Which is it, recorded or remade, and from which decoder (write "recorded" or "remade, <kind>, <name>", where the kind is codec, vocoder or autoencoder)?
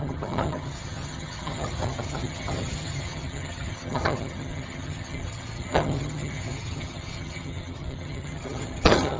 remade, vocoder, HiFi-GAN